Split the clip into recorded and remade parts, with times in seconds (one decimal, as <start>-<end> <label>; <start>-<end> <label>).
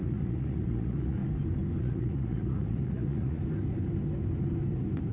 0.0-1.2 remade; 1.2-1.8 recorded; 1.8-3.4 remade; 3.4-5.1 recorded